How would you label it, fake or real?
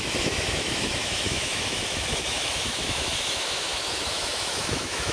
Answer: fake